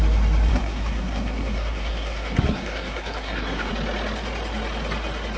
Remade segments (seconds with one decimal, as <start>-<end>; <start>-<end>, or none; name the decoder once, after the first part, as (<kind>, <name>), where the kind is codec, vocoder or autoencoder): 0.5-3.7 (codec, SNAC)